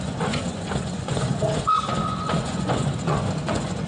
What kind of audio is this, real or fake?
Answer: fake